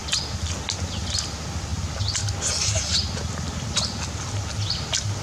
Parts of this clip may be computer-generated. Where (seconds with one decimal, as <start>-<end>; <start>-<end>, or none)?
none